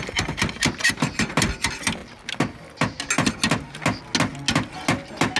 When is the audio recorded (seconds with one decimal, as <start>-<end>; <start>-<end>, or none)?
0.0-0.8; 1.3-5.4